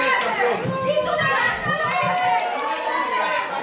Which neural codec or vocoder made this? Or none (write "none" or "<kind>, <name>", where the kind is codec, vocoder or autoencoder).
none